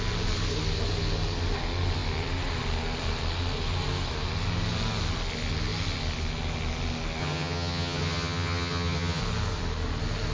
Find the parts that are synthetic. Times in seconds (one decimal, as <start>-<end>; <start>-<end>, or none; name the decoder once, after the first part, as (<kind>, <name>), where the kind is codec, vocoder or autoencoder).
7.2-9.2 (vocoder, HiFi-GAN)